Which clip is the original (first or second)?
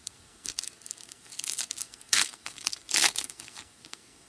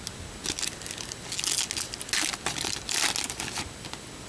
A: second